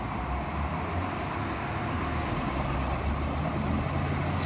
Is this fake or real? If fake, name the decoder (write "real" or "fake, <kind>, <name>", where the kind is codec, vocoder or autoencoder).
real